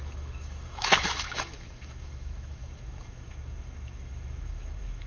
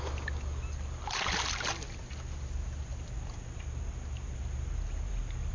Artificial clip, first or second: first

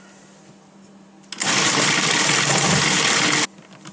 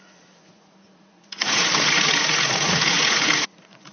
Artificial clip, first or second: second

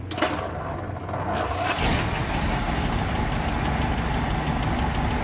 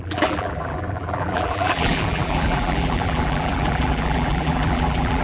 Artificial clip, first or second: second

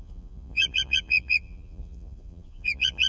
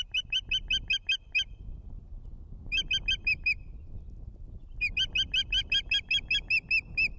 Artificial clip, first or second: first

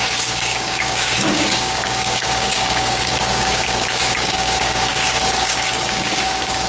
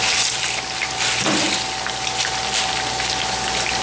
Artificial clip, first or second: first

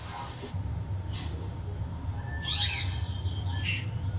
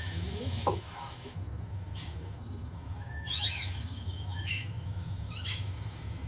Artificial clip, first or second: second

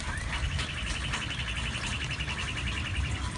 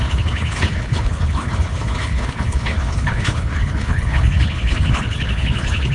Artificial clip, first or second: second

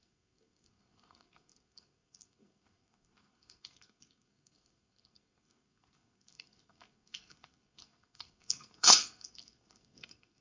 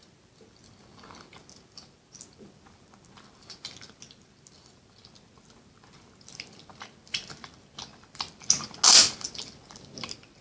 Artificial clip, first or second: first